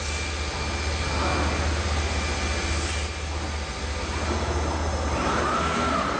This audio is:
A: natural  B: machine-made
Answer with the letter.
A